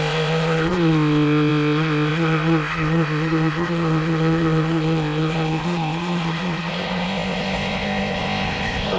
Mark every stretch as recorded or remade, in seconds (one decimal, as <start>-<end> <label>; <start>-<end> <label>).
0.0-9.0 remade